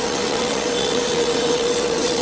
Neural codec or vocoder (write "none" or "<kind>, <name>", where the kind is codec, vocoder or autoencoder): vocoder, WaveNeXt